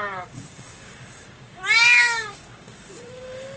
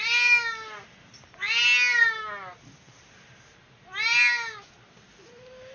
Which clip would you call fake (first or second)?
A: first